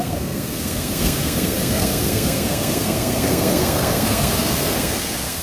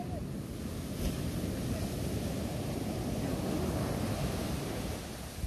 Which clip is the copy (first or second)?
first